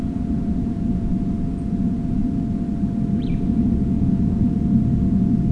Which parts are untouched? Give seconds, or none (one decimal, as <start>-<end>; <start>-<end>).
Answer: 1.1-1.7; 2.2-3.4